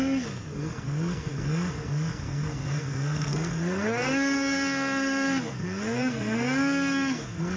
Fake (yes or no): yes